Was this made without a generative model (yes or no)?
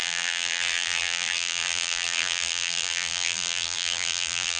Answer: no